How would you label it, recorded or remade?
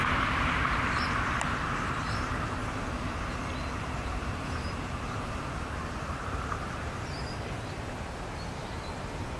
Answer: remade